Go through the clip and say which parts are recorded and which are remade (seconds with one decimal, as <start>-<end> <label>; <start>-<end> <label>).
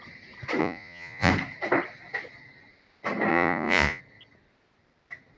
0.0-0.6 recorded; 0.6-1.3 remade; 1.3-3.3 recorded; 3.3-4.0 remade; 4.0-5.4 recorded